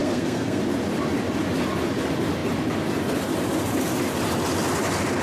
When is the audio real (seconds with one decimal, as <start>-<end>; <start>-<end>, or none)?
0.6-5.2